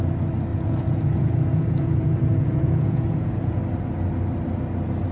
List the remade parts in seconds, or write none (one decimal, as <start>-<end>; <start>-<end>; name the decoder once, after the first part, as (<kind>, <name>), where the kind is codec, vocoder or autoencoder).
0.5-3.6 (vocoder, Vocos)